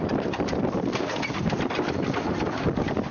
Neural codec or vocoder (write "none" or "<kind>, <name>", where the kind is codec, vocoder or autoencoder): none